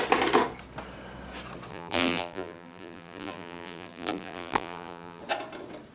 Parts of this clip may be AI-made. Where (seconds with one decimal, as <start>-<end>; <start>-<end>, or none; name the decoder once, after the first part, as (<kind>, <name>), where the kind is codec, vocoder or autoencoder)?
1.7-5.2 (vocoder, BigVGAN v2)